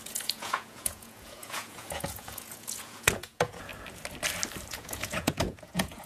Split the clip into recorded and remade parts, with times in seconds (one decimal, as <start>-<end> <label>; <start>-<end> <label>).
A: 0.0-3.7 remade; 3.7-4.7 recorded; 4.7-6.1 remade